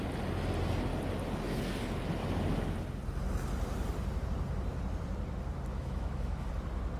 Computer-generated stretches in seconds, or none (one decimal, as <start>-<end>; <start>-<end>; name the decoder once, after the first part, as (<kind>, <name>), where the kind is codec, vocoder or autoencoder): 5.7-6.5 (autoencoder, DAC-VAE)